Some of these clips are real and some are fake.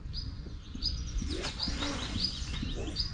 fake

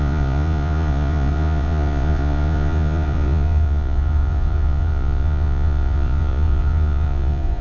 fake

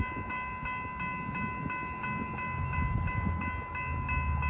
real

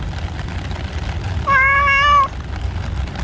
real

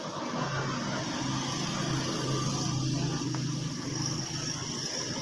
real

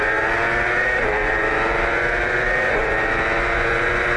fake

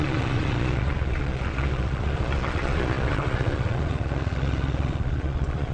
fake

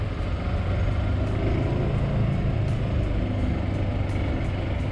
real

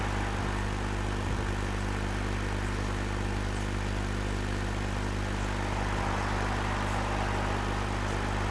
real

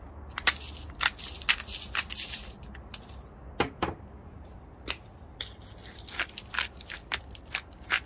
real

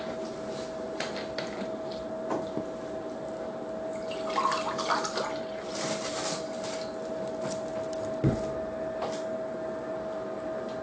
real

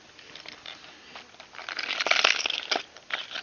real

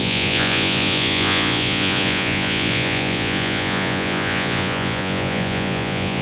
fake